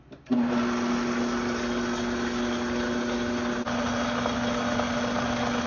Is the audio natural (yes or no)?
yes